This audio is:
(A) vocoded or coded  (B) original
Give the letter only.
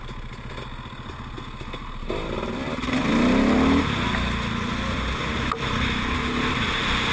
B